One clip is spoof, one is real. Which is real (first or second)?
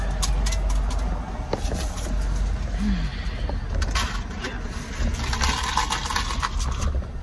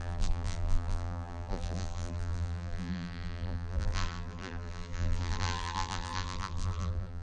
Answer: first